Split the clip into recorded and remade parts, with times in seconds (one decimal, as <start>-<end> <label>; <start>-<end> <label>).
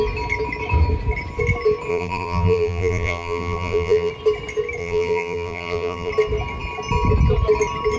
0.0-1.9 recorded; 1.9-4.1 remade; 4.1-4.8 recorded; 4.8-6.1 remade; 6.1-8.0 recorded